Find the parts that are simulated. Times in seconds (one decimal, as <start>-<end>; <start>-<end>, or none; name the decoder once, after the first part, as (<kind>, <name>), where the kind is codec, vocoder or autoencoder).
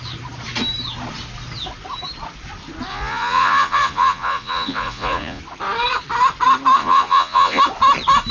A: 2.9-5.4 (vocoder, Vocos); 6.8-7.6